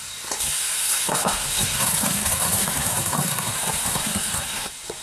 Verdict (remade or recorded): remade